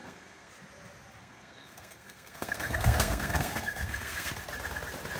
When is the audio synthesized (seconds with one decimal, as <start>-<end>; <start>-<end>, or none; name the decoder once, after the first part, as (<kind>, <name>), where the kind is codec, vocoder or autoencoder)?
0.0-0.5 (codec, SNAC); 1.2-4.3